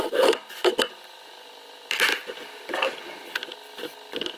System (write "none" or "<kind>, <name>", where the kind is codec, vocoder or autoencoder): none